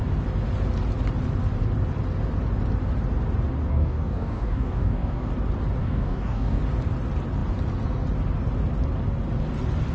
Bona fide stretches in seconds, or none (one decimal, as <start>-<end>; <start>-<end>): 0.0-3.7; 5.3-5.8; 6.6-9.9

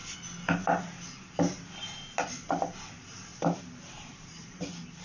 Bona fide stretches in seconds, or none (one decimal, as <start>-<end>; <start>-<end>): 0.0-3.3

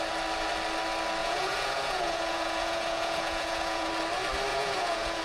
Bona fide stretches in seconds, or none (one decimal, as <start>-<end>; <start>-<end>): 0.0-1.2; 3.9-4.5

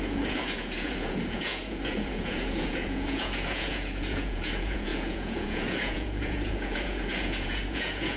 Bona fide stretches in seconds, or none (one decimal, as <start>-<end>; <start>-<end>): none

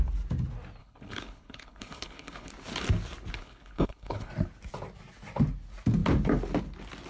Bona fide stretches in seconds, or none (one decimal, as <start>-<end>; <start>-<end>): 0.0-0.8; 2.5-3.4; 4.3-7.1

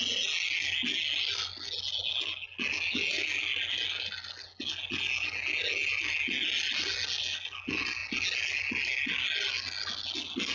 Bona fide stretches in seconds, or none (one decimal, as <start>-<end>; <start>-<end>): 0.0-10.5

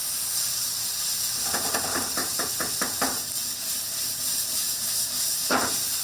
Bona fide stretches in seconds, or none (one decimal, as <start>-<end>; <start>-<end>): 0.9-1.8; 3.4-4.0